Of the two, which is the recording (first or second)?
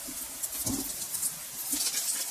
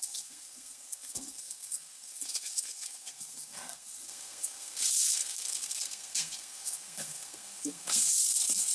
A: first